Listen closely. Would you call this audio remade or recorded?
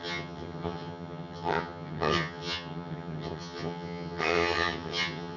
remade